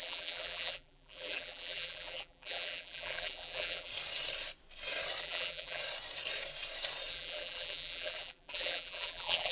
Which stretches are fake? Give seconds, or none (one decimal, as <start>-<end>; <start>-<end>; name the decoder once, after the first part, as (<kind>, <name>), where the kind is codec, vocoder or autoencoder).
0.0-3.9 (vocoder, BigVGAN v2); 5.2-5.8; 7.1-9.5